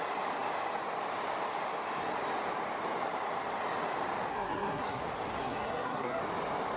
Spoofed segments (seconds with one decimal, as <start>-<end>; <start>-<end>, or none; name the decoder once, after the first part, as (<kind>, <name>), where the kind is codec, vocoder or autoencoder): 4.3-5.0 (codec, SNAC); 5.4-6.2